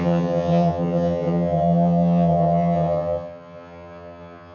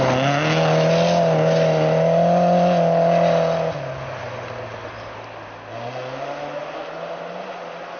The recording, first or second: second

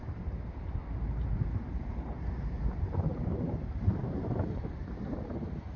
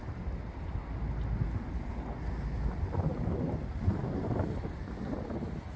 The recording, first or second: second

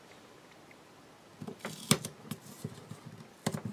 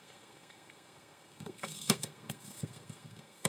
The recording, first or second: first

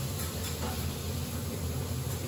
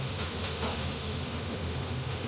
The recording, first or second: first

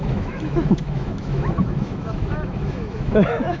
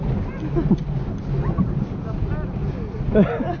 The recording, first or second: second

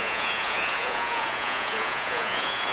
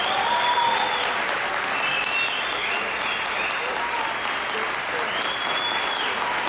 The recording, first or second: second